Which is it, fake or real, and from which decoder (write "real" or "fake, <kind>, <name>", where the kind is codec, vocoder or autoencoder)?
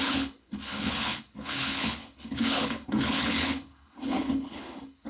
fake, codec, HILCodec